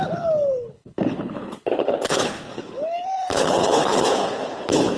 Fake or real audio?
fake